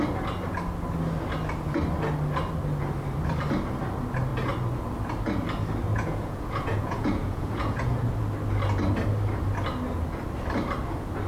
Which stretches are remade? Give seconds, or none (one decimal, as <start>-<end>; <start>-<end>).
5.9-8.1